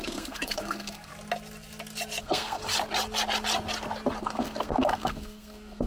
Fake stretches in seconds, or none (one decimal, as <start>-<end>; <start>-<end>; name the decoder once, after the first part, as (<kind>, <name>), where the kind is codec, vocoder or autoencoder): 0.0-1.1 (codec, SNAC); 2.2-2.6; 4.2-5.9